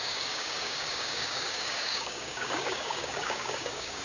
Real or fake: fake